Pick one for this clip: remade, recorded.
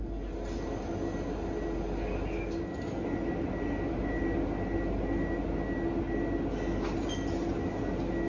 recorded